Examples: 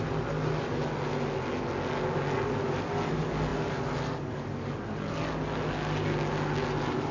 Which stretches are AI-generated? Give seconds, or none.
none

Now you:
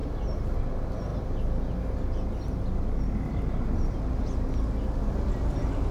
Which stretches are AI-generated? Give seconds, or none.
none

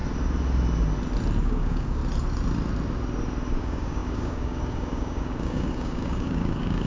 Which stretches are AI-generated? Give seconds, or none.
1.4-2.0 (codec, DAC); 3.6-6.9

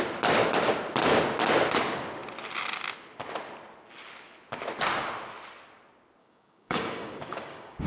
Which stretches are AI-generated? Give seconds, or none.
6.2-7.9 (codec, DAC)

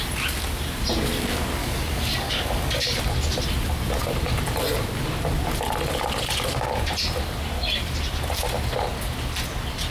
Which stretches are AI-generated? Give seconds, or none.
1.6-3.0 (codec, DAC)

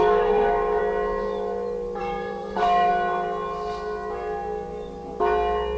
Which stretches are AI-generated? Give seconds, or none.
0.0-0.8 (codec, DAC); 2.0-2.9